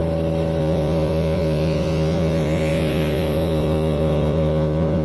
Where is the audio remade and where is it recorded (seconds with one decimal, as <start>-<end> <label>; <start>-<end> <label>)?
0.0-0.6 recorded; 0.6-5.0 remade